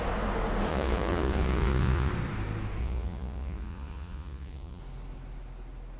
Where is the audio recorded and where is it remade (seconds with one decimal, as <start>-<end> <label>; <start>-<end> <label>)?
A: 0.0-0.7 recorded; 0.7-2.1 remade; 2.1-2.8 recorded; 2.8-4.8 remade; 4.8-6.0 recorded